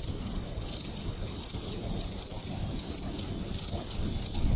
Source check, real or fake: real